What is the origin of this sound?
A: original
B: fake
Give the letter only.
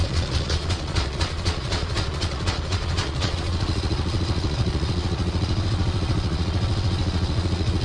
B